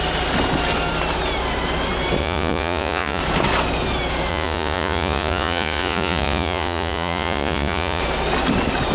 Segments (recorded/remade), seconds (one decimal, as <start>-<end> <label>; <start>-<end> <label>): 0.0-2.2 recorded; 2.2-3.2 remade; 3.2-4.3 recorded; 4.3-8.0 remade; 8.0-8.9 recorded